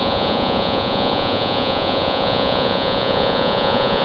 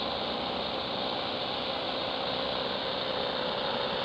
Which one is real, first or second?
second